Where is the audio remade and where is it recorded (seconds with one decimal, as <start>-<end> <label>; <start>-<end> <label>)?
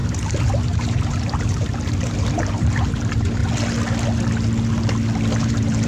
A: 0.0-3.4 remade; 3.4-5.4 recorded; 5.4-5.9 remade